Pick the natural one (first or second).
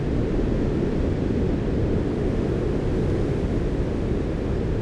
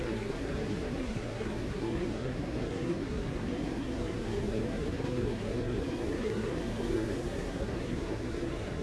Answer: first